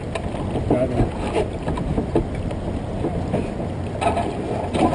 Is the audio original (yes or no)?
yes